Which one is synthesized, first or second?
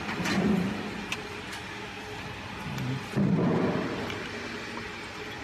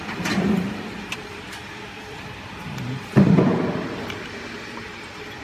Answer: second